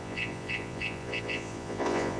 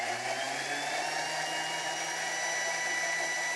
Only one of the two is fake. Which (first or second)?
first